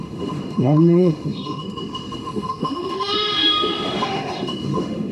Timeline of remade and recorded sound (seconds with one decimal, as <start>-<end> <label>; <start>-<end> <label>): 0.0-5.1 remade